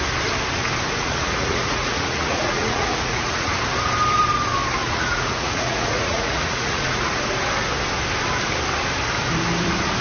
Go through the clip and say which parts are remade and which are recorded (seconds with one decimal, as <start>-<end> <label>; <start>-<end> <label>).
0.0-1.0 recorded; 1.0-3.5 remade; 3.5-4.8 recorded; 4.8-7.2 remade; 7.2-10.0 recorded